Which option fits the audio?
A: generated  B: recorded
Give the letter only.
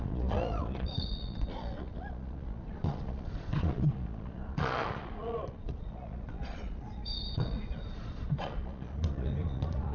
A